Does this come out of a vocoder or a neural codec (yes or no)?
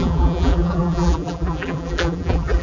yes